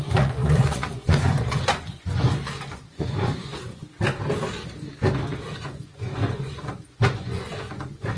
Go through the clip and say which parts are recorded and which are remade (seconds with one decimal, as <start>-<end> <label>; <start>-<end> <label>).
0.0-3.8 remade; 3.8-5.6 recorded; 5.6-8.2 remade